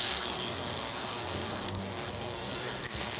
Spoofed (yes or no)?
yes